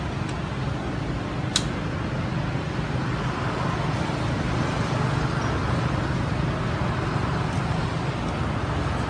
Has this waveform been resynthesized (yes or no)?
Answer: no